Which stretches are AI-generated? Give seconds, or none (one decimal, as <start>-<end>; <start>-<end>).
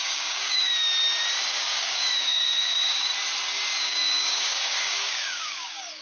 0.0-0.7; 1.5-3.1; 3.8-6.0